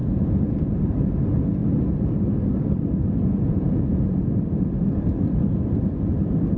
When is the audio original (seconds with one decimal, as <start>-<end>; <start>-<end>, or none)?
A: 0.8-3.0; 4.2-6.6